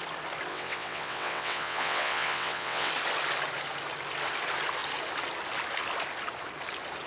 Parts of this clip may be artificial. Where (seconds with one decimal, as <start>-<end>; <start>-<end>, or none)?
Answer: 0.5-2.9